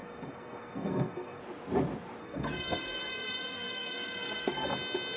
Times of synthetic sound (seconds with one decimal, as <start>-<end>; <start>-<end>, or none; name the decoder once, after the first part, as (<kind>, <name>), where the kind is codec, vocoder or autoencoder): 0.0-1.4 (codec, SNAC); 2.2-4.7